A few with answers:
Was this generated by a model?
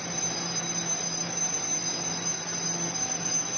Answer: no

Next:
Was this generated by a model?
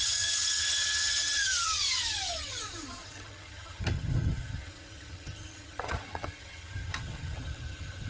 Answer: yes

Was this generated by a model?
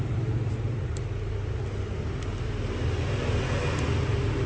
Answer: no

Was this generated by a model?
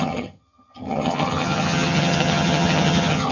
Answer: yes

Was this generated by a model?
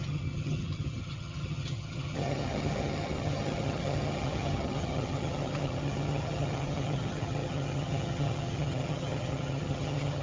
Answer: yes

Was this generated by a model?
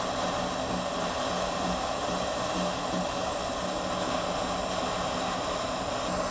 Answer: no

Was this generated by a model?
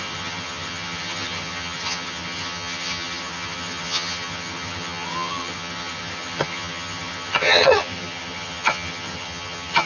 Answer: yes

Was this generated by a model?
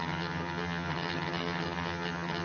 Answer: yes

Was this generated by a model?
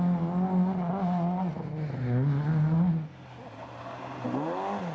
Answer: no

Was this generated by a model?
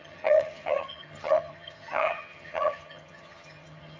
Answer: yes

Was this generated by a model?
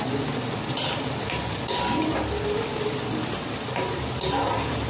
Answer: no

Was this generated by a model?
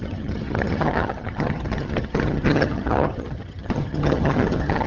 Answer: yes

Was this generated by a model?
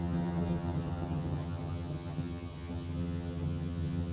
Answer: yes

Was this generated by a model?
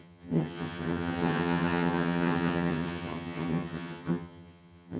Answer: yes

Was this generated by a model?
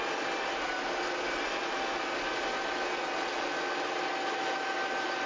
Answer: no